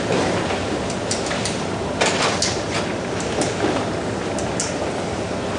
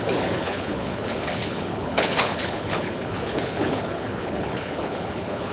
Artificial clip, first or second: second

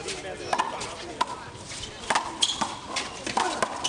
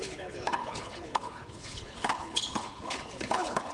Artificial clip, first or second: second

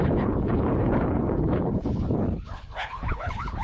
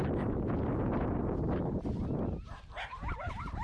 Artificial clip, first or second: first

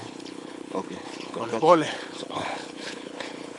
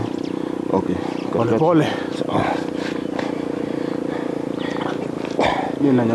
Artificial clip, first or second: first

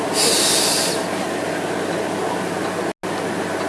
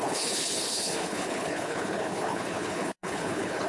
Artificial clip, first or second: second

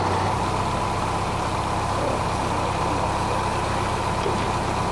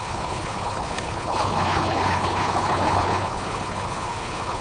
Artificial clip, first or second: second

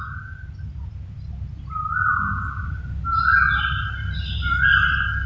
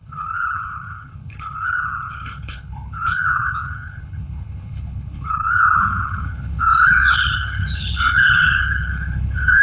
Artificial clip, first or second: second